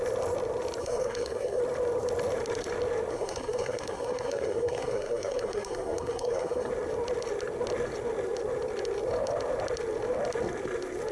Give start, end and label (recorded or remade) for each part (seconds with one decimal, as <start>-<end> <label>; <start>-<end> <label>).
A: 0.0-0.8 recorded; 0.8-1.6 remade; 1.6-3.1 recorded; 3.1-6.7 remade; 6.7-11.1 recorded